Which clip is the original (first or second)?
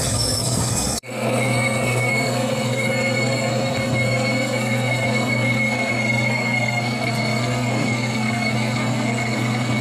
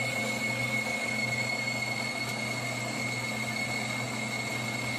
second